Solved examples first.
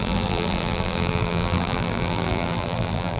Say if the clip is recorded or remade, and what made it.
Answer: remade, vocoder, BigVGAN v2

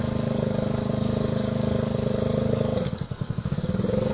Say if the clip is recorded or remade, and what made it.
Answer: remade, codec, DAC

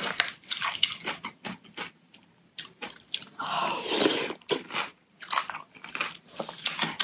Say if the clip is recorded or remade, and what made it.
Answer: recorded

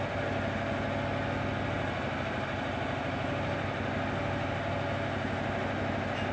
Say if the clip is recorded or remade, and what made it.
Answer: recorded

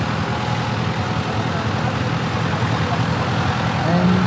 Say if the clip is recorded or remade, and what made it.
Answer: recorded